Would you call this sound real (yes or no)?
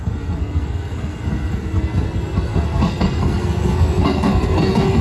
no